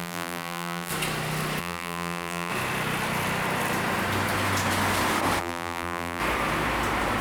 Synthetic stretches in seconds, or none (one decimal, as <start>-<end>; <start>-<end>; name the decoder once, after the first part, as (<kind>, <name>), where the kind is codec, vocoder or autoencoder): 0.0-0.9 (vocoder, BigVGAN v2); 1.6-2.5; 5.4-6.2